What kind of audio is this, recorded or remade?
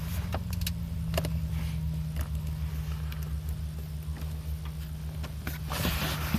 recorded